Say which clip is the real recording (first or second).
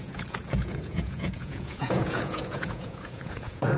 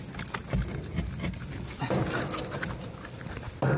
second